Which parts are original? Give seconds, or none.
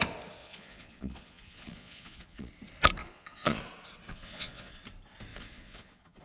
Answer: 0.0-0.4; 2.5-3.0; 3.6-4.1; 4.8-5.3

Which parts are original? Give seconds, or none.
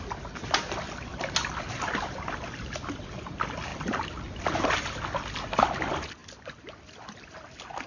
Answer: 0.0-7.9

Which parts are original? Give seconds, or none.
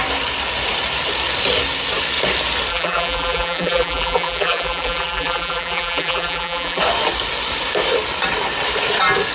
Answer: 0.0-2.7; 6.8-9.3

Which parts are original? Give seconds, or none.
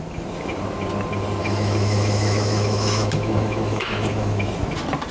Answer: 0.0-1.4; 4.5-5.1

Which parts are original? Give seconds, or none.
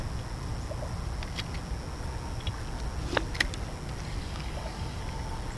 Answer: 0.0-4.2; 5.0-5.6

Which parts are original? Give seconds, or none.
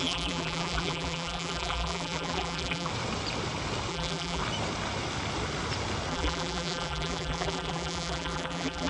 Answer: 2.9-3.9; 4.4-6.1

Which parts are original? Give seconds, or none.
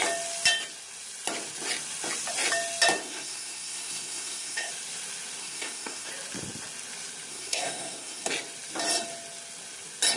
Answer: 0.0-3.0; 4.7-5.4; 6.1-7.3; 8.3-10.2